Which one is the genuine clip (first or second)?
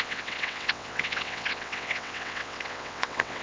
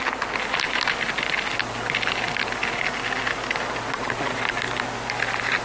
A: second